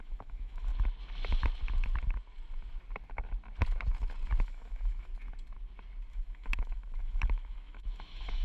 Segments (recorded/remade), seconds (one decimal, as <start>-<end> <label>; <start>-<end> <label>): 0.0-0.7 remade; 0.7-4.4 recorded; 4.4-5.1 remade; 5.1-6.1 recorded; 6.1-8.4 remade